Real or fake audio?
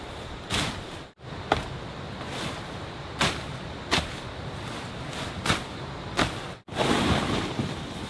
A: real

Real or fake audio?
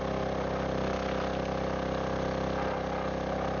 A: real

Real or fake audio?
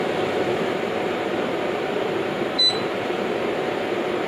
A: fake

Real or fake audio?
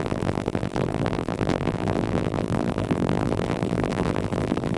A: fake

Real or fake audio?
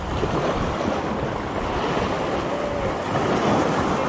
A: real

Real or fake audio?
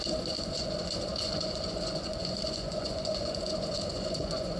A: fake